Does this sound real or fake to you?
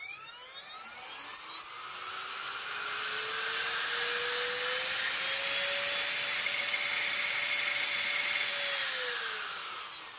real